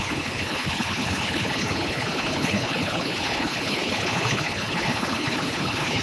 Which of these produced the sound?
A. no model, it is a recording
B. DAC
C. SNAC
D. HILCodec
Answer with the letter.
D